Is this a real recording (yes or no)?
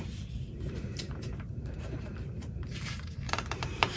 no